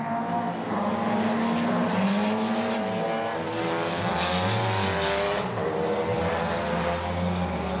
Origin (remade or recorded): recorded